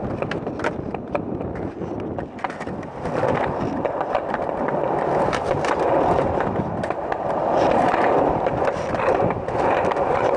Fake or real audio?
fake